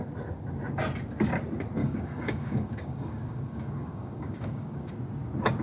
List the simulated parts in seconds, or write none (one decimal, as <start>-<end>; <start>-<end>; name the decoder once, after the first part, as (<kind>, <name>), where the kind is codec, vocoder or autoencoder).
1.8-4.9 (codec, DAC)